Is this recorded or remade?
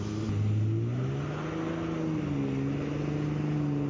recorded